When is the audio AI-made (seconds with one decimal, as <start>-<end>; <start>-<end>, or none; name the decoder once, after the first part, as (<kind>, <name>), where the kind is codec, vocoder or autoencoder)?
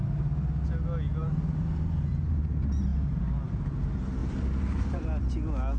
1.2-2.4 (vocoder, BigVGAN v2); 4.2-5.1